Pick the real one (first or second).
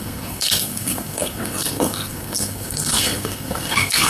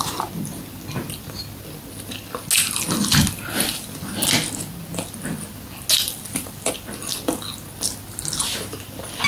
second